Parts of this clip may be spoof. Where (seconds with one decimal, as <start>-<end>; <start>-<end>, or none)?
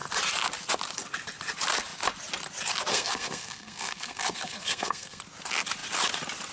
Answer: 2.9-5.2